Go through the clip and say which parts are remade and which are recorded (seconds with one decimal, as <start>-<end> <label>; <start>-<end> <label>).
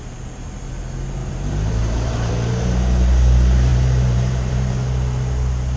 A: 0.0-1.2 recorded; 1.2-2.3 remade; 2.3-3.7 recorded; 3.7-4.7 remade; 4.7-5.8 recorded